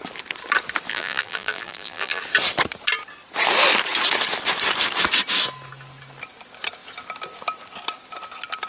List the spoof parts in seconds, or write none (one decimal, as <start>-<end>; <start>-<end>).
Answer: 0.9-2.2